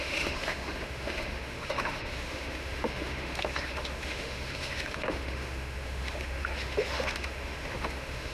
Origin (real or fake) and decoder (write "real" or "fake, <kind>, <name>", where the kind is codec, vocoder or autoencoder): fake, autoencoder, DAC-VAE